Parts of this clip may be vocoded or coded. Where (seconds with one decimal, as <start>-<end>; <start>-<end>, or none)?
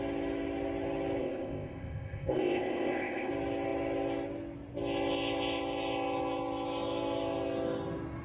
1.2-3.3